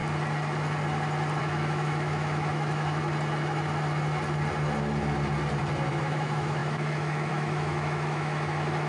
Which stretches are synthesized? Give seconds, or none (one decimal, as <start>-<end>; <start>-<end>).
1.4-3.0; 5.9-8.9